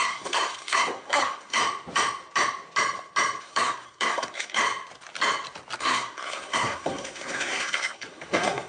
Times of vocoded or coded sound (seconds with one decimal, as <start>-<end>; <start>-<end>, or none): 0.0-1.6; 3.4-4.6; 5.8-8.7